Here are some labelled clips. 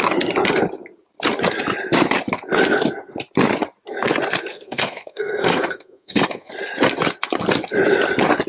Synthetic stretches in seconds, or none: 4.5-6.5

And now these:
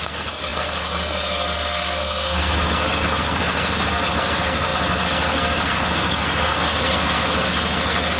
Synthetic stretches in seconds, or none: 0.0-8.2